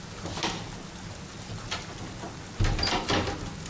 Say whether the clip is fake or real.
real